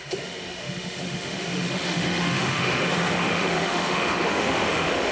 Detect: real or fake fake